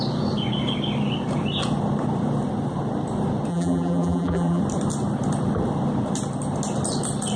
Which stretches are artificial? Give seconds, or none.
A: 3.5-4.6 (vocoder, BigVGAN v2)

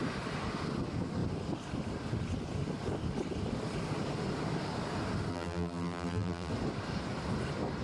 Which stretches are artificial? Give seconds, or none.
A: 5.3-6.5 (vocoder, BigVGAN v2)

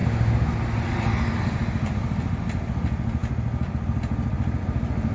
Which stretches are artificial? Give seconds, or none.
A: none

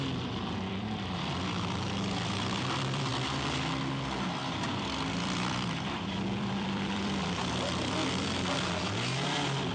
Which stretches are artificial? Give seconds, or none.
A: 0.0-3.1 (vocoder, BigVGAN v2); 4.7-9.7

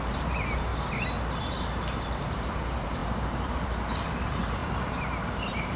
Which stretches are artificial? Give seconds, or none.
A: 0.0-0.7 (vocoder, BigVGAN v2); 1.4-5.8